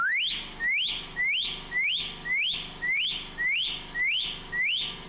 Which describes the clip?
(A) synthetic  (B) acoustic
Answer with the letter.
B